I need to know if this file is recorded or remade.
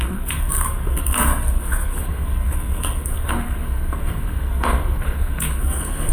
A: remade